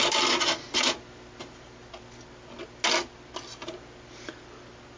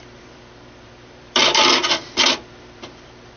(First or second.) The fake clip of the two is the second